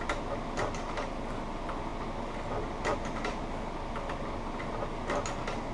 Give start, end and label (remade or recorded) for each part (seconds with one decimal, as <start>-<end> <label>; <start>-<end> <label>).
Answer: 0.0-5.7 recorded

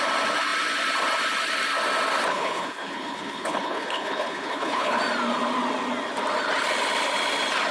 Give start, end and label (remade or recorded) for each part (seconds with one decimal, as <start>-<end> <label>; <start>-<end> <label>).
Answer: 0.0-2.3 recorded; 2.3-5.0 remade; 5.0-7.7 recorded

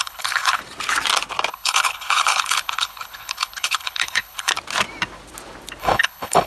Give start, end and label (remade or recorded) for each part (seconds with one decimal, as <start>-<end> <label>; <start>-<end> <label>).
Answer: 0.0-0.6 remade; 0.6-1.5 recorded; 1.5-4.5 remade; 4.5-5.8 recorded; 5.8-6.5 remade

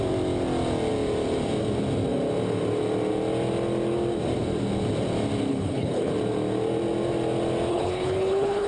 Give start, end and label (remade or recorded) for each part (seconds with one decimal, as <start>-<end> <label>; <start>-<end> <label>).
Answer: 0.0-5.5 recorded; 5.5-6.1 remade; 6.1-7.7 recorded; 7.7-8.7 remade

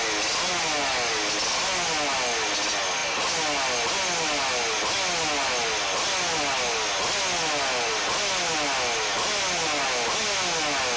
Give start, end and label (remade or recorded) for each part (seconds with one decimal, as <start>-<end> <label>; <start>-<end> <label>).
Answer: 0.0-11.0 recorded

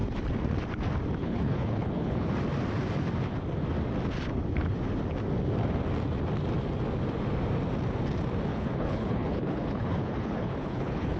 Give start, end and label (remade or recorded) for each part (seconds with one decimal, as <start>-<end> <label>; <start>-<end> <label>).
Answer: 0.0-1.2 recorded; 1.2-2.3 remade; 2.3-8.5 recorded; 8.5-11.2 remade

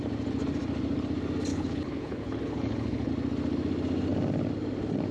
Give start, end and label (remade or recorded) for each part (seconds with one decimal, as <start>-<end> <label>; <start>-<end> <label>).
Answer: 0.0-1.5 recorded; 1.5-3.1 remade; 3.1-5.1 recorded